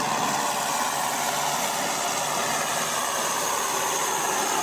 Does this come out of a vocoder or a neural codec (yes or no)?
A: no